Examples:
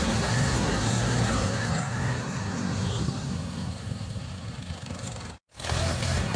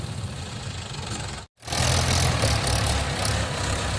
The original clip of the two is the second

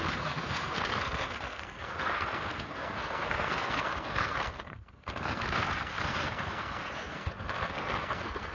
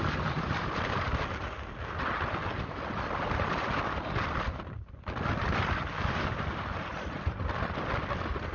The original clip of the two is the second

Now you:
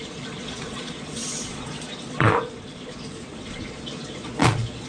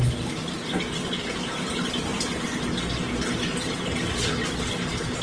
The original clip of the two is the second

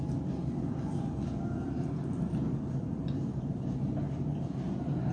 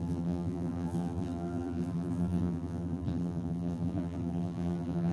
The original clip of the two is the first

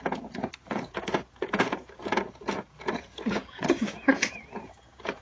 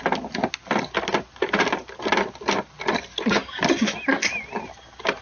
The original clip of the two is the second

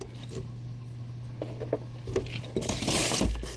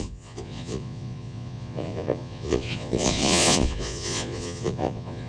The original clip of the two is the first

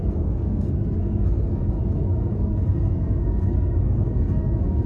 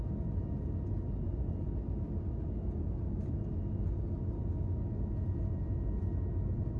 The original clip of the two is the second